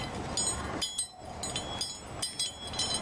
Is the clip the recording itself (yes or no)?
yes